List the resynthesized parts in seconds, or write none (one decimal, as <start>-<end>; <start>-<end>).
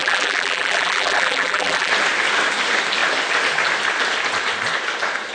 0.0-1.9